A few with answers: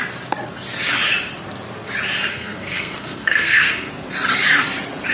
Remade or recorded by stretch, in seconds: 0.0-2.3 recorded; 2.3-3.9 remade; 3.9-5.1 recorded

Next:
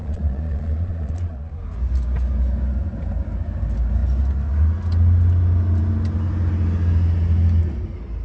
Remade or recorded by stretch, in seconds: 0.0-1.5 remade; 1.5-8.2 recorded